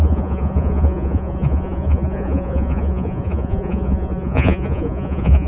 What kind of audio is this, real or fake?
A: fake